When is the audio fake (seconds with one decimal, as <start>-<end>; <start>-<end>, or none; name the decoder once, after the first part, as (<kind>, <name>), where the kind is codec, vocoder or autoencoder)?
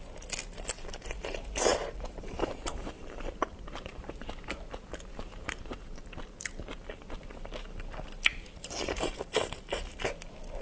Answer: 1.7-6.1 (vocoder, BigVGAN v2); 8.3-9.4